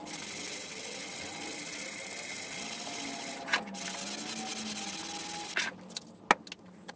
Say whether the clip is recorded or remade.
recorded